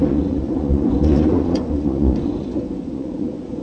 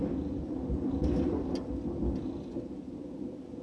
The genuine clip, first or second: second